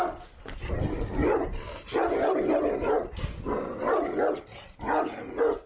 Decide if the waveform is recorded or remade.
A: recorded